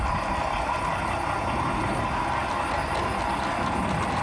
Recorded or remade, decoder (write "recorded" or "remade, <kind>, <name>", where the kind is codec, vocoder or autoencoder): recorded